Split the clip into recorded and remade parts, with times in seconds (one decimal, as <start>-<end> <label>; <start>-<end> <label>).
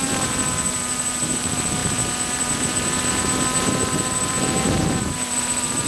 0.0-5.9 remade